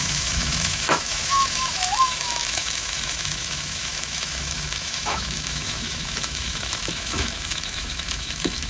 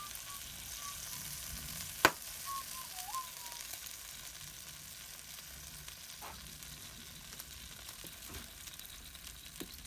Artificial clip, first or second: first